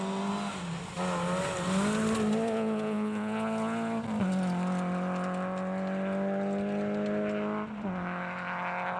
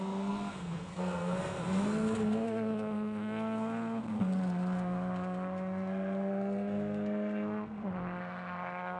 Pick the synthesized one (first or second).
second